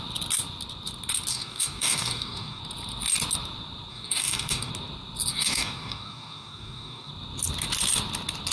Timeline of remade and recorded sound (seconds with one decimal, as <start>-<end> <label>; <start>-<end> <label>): 0.0-1.3 recorded; 1.3-2.6 remade; 2.6-3.9 recorded; 3.9-4.7 remade; 4.7-5.3 recorded; 5.3-7.1 remade; 7.1-8.5 recorded